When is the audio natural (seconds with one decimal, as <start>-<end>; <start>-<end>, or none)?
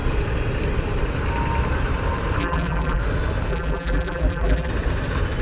0.0-2.4; 3.0-3.5; 4.7-5.4